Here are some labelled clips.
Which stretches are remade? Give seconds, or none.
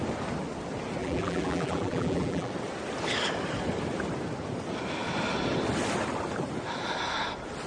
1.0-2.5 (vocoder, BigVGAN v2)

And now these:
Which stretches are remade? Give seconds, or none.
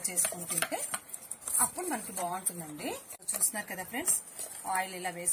0.0-2.6 (vocoder, BigVGAN v2)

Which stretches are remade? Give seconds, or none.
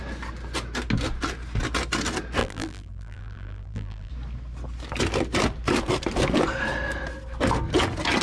2.4-4.1 (vocoder, BigVGAN v2)